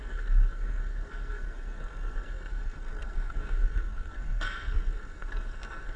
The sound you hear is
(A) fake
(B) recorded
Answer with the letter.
A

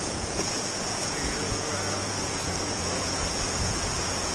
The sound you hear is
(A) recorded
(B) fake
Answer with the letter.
B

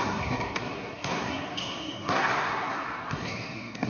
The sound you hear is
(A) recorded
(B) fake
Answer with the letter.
B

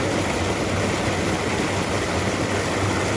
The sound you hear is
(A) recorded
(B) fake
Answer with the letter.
A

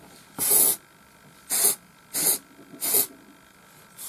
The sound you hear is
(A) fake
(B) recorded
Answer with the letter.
B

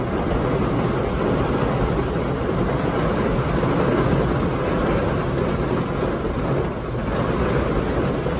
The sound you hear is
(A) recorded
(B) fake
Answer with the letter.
A